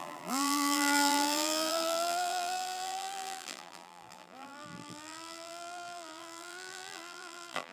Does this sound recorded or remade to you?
remade